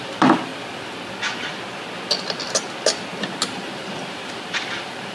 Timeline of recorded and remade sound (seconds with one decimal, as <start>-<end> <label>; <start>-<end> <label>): 0.0-0.5 remade; 0.5-3.2 recorded; 3.2-5.1 remade

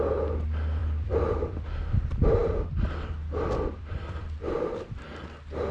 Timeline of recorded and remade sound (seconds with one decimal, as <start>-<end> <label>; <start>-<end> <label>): 0.0-0.8 recorded; 0.8-1.8 remade; 1.8-2.4 recorded; 2.4-5.0 remade; 5.0-5.7 recorded

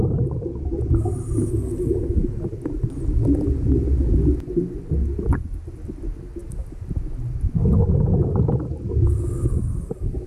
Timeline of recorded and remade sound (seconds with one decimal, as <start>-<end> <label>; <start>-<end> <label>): 0.0-10.3 recorded

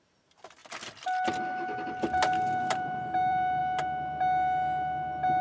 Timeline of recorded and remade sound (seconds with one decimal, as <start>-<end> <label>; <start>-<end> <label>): 0.0-0.6 remade; 0.6-2.6 recorded; 2.6-3.6 remade; 3.6-5.4 recorded

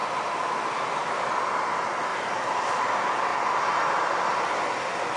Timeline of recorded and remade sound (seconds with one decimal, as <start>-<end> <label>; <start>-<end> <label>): 0.0-2.1 recorded; 2.1-2.8 remade; 2.8-5.2 recorded

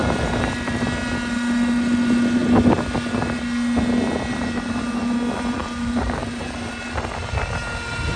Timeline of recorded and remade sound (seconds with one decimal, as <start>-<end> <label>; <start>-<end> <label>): 0.0-5.6 recorded; 5.6-6.8 remade; 6.8-8.2 recorded

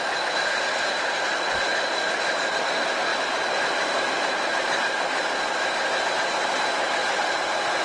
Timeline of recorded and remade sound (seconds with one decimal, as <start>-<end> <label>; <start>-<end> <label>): 0.0-7.8 recorded